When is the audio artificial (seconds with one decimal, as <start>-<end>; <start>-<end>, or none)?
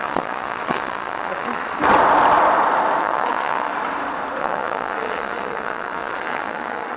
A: 0.0-1.8; 3.0-3.7; 4.4-7.0